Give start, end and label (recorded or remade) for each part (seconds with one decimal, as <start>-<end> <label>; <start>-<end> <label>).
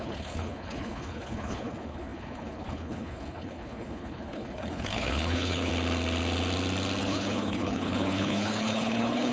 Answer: 0.0-5.7 remade; 5.7-7.0 recorded; 7.0-9.3 remade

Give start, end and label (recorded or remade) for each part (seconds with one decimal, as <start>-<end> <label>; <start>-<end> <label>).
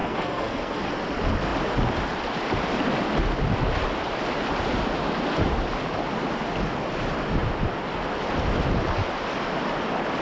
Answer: 0.0-0.8 remade; 0.8-10.2 recorded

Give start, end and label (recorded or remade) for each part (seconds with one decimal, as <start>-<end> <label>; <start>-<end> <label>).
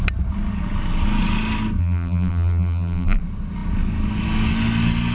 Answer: 0.0-1.8 recorded; 1.8-3.2 remade; 3.2-5.1 recorded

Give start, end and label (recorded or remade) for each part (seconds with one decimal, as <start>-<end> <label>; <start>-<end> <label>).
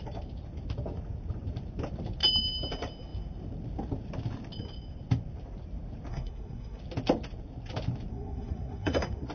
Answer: 0.0-6.1 recorded; 6.1-6.8 remade; 6.8-8.1 recorded; 8.1-9.3 remade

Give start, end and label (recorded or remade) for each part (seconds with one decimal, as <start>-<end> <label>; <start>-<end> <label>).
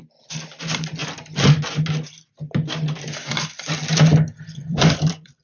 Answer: 0.0-4.6 recorded; 4.6-5.4 remade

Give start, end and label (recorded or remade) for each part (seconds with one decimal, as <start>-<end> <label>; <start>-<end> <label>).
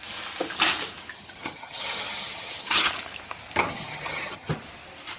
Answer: 0.0-1.1 recorded; 1.1-2.9 remade; 2.9-3.7 recorded; 3.7-4.5 remade; 4.5-5.2 recorded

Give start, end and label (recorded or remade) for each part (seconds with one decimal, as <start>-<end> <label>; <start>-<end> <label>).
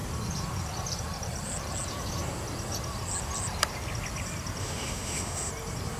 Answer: 0.0-4.6 recorded; 4.6-5.5 remade; 5.5-6.0 recorded